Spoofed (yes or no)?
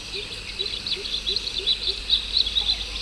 no